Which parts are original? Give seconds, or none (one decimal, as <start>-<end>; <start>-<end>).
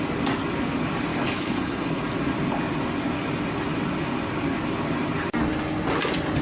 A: 0.0-1.1; 2.0-6.4